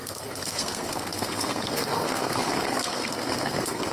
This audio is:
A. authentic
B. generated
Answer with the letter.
B